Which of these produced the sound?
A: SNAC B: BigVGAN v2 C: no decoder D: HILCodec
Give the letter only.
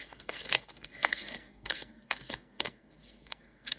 A